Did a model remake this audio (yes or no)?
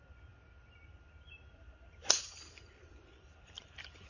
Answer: yes